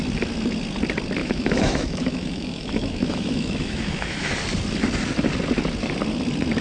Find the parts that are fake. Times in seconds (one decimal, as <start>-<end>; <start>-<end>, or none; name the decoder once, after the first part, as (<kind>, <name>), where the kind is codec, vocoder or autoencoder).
1.2-4.3 (autoencoder, DAC-VAE)